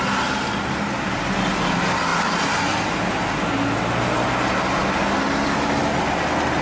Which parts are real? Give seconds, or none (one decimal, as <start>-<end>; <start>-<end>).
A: 0.0-6.6